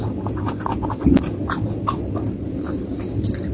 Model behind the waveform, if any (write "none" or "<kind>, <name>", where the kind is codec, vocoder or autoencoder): none